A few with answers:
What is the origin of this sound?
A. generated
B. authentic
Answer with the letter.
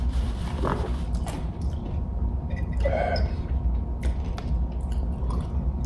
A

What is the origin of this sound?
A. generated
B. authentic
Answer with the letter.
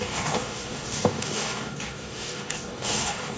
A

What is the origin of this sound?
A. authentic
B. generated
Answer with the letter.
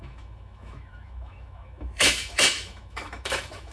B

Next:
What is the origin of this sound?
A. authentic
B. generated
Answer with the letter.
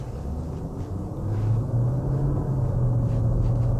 A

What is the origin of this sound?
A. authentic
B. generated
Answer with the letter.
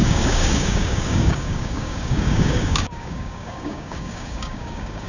B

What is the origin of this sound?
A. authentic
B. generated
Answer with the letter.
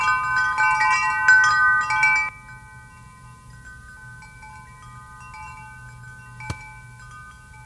A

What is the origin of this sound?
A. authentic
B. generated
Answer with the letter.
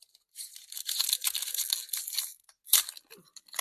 A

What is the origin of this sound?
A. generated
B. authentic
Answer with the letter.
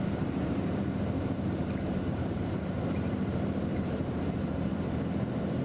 A